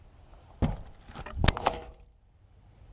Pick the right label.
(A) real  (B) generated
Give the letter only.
A